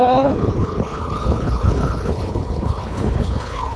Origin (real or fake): fake